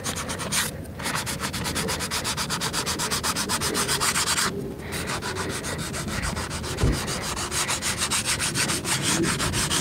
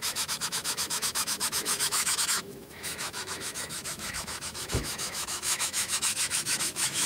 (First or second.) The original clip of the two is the first